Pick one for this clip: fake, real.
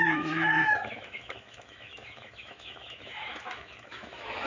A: fake